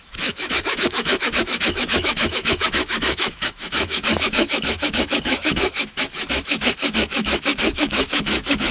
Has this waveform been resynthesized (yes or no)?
yes